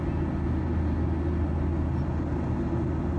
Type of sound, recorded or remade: recorded